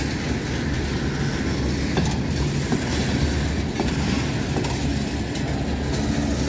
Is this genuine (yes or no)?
yes